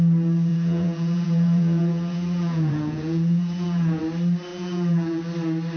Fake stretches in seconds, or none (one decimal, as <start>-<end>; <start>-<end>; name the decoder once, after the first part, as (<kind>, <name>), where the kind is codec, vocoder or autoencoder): 0.5-4.0 (vocoder, Vocos); 4.5-5.2